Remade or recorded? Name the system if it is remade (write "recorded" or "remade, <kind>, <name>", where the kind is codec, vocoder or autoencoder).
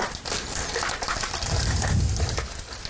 recorded